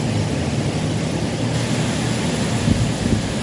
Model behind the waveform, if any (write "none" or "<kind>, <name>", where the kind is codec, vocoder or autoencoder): none